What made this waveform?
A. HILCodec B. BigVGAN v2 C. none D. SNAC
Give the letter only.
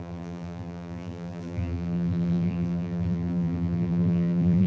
B